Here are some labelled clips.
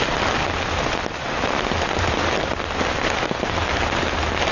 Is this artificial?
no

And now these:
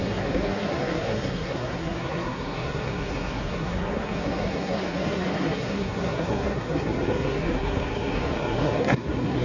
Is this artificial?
yes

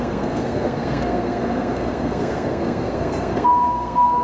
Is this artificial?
yes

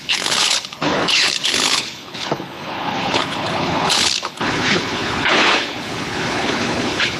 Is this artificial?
yes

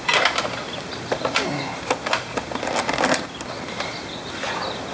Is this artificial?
no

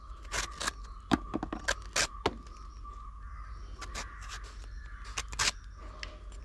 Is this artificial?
no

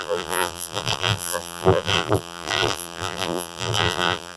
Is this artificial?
yes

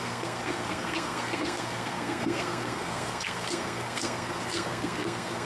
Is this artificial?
yes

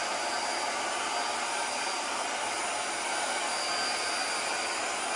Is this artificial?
no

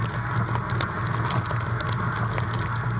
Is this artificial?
no